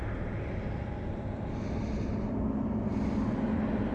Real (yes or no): yes